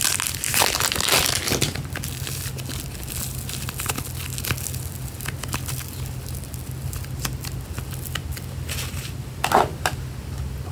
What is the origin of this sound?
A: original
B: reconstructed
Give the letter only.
A